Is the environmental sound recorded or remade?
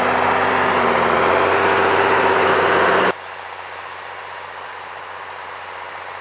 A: recorded